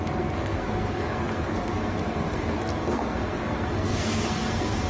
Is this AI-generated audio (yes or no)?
yes